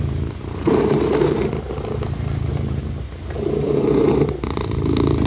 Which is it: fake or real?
fake